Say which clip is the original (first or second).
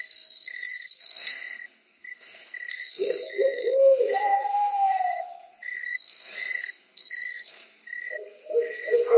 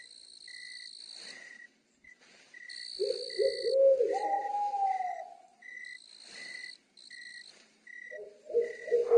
second